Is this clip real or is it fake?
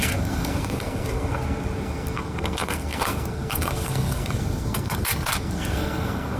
fake